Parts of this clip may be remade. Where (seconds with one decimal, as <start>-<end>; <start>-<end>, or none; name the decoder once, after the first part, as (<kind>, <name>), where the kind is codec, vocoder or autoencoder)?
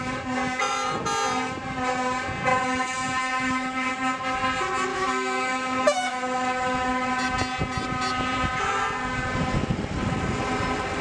2.5-3.9 (autoencoder, DAC-VAE); 4.9-7.1